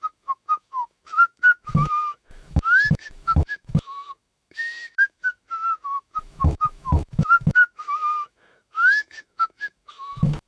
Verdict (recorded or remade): remade